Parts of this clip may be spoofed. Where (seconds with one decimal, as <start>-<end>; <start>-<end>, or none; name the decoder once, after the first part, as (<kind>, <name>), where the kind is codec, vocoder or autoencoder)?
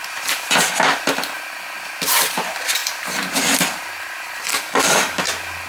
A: 4.5-5.2 (codec, DAC)